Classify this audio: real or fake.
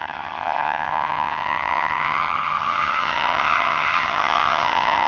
fake